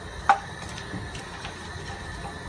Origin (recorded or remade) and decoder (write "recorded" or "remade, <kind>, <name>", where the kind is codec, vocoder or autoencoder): recorded